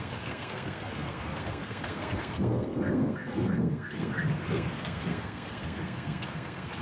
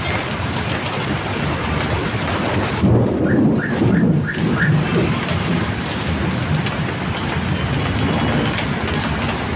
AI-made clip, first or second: first